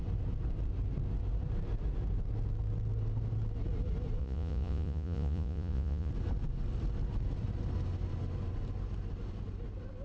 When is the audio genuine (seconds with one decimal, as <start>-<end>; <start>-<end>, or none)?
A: 0.0-4.2; 6.1-10.0